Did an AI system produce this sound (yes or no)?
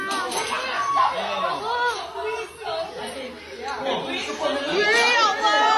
no